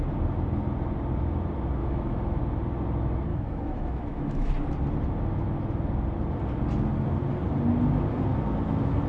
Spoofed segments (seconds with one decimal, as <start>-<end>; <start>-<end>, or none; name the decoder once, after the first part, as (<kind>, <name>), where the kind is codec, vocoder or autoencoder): 1.8-2.4 (autoencoder, DAC-VAE); 3.3-4.5